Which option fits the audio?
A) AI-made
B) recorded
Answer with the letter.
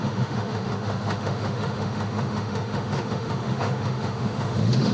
A